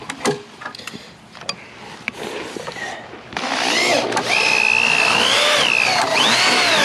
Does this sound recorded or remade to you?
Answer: recorded